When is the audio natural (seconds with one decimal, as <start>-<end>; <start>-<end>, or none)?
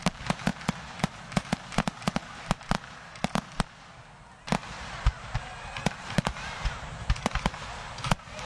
0.5-4.3